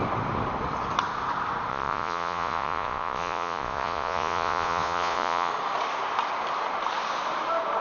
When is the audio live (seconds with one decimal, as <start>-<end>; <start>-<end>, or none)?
0.0-1.7; 5.5-7.8